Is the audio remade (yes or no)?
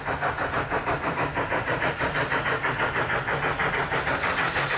no